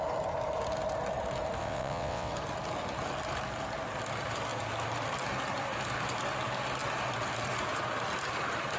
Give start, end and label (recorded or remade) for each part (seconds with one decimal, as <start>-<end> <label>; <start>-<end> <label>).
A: 0.0-1.6 recorded; 1.6-2.3 remade; 2.3-8.8 recorded